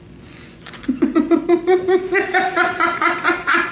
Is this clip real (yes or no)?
no